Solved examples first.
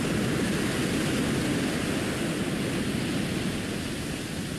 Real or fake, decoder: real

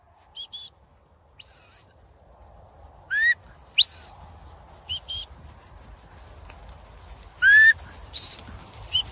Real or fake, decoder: real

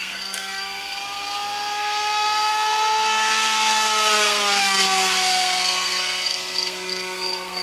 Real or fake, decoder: fake, codec, SNAC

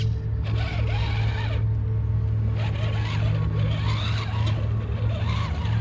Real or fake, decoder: real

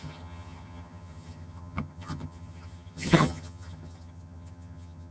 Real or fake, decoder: fake, vocoder, HiFi-GAN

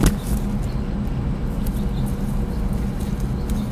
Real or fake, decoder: real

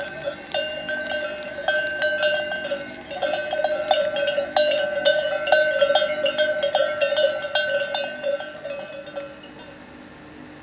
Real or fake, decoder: real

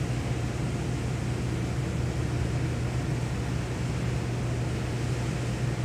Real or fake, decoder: real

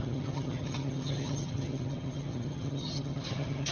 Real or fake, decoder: fake, vocoder, HiFi-GAN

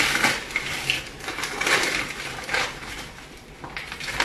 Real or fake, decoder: real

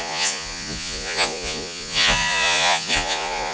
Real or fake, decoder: fake, vocoder, Vocos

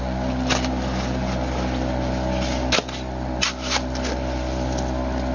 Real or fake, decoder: real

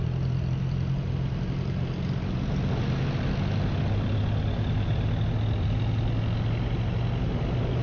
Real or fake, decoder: real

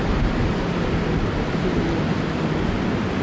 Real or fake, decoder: real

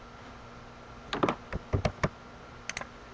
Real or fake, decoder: real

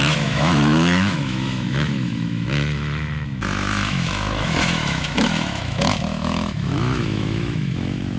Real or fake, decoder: fake, autoencoder, DAC-VAE